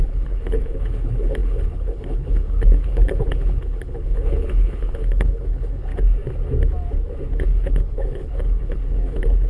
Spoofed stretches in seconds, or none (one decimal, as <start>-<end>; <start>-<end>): 0.0-5.9; 7.3-9.5